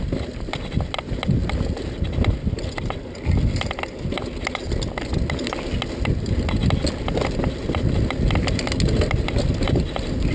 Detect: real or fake real